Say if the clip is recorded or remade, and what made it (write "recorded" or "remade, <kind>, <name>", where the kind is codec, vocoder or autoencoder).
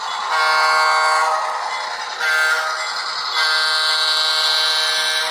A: recorded